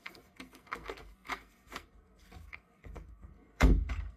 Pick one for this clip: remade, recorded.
remade